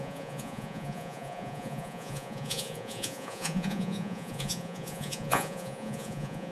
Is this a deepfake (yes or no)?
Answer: yes